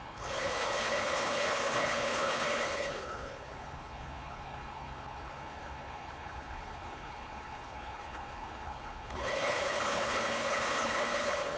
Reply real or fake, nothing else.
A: fake